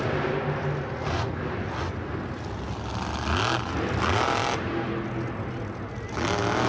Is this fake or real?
real